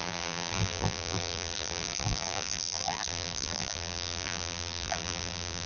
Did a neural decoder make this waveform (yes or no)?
yes